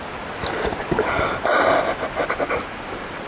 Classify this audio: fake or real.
real